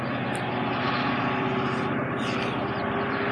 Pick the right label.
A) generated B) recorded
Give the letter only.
B